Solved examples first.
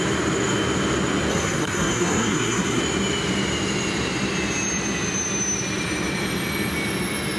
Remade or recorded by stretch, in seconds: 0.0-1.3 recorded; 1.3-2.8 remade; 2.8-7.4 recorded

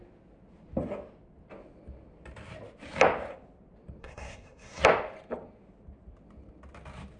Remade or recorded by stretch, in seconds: 0.0-4.0 recorded; 4.0-4.8 remade; 4.8-7.2 recorded

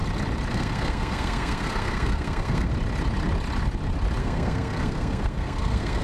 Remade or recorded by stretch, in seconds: 0.0-0.5 recorded; 0.5-2.7 remade; 2.7-4.2 recorded; 4.2-6.0 remade

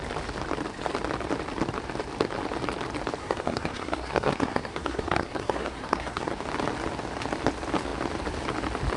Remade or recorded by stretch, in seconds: 0.0-3.2 recorded; 3.2-6.3 remade; 6.3-9.0 recorded

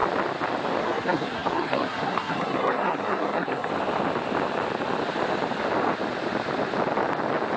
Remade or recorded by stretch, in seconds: 0.0-0.8 recorded; 0.8-3.7 remade; 3.7-7.6 recorded

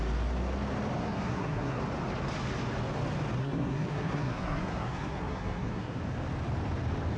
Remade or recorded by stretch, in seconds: 0.0-1.0 recorded; 1.0-1.8 remade; 1.8-3.4 recorded; 3.4-6.0 remade; 6.0-7.2 recorded